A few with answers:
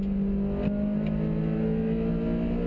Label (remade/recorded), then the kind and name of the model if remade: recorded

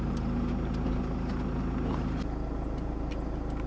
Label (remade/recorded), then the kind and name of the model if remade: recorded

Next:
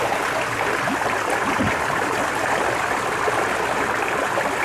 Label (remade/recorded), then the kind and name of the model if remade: recorded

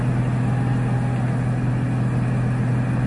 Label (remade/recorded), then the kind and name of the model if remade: recorded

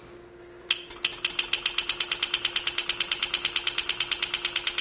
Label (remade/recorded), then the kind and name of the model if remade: recorded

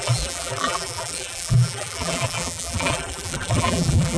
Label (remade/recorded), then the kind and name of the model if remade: remade, vocoder, BigVGAN v2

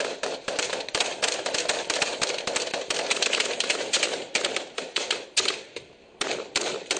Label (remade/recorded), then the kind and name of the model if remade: recorded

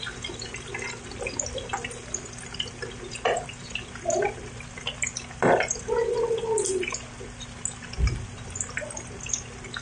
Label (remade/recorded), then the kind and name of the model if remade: recorded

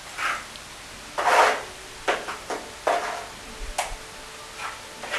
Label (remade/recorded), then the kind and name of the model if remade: recorded